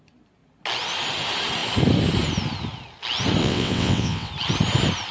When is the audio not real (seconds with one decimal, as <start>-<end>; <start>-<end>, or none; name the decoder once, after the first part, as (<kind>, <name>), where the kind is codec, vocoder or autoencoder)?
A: 3.4-4.3 (vocoder, WaveNeXt)

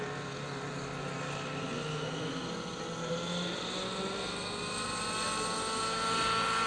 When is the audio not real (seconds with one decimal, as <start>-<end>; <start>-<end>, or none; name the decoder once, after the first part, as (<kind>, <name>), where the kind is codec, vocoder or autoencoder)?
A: none

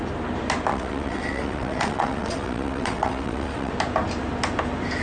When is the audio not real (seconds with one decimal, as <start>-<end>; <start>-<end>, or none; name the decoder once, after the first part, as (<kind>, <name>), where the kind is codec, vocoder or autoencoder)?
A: 0.7-3.7 (vocoder, WaveNeXt)

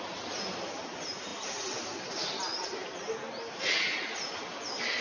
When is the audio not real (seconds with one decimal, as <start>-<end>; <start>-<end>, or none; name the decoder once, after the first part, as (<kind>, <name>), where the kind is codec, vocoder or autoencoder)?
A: none

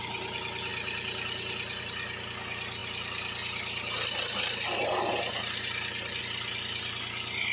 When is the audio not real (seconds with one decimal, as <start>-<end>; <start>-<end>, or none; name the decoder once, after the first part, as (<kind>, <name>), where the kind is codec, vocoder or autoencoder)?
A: none

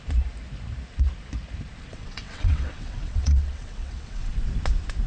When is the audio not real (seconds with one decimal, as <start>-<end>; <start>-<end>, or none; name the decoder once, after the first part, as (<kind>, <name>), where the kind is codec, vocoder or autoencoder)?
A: 1.9-4.3 (vocoder, WaveNeXt)

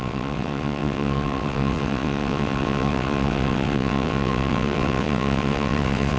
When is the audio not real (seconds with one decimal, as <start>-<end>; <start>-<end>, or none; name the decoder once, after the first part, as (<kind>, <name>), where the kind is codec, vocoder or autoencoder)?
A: 0.0-6.2 (vocoder, WaveNeXt)